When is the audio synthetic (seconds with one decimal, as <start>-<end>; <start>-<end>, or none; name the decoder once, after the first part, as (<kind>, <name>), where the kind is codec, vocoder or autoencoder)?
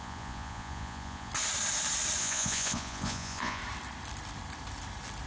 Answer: 0.0-1.3 (vocoder, Vocos); 2.2-3.6